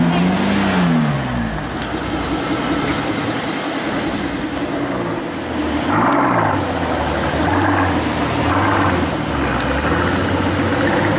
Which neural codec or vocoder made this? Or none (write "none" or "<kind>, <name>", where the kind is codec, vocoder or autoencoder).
none